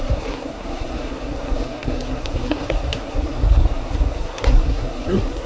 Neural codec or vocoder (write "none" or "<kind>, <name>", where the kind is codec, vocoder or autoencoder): codec, SNAC